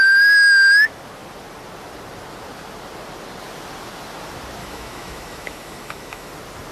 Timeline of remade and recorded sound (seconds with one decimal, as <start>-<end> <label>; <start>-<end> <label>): 0.0-4.6 recorded; 4.6-6.3 remade; 6.3-6.7 recorded